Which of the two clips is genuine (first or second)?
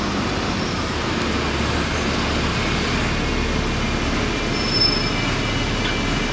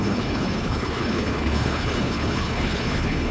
first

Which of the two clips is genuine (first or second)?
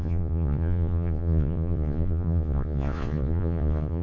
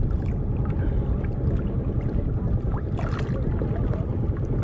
second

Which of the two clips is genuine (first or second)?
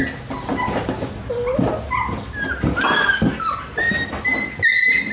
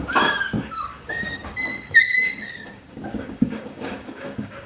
first